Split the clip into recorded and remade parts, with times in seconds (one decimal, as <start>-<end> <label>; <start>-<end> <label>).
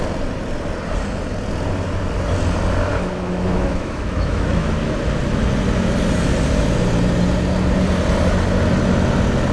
0.0-2.9 recorded; 2.9-5.0 remade; 5.0-9.5 recorded